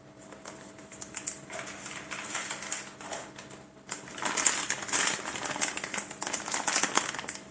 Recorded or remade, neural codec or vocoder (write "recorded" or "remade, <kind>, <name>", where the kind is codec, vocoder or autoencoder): recorded